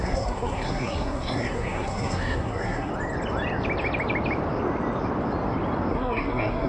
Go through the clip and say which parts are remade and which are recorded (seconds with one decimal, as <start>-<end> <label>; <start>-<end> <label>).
0.0-2.9 remade; 2.9-5.9 recorded; 5.9-6.7 remade